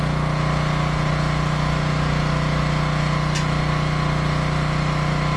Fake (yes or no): no